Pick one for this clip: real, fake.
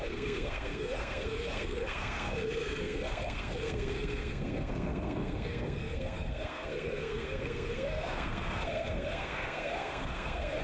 fake